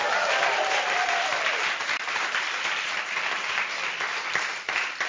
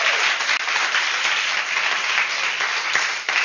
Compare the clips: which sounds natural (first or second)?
second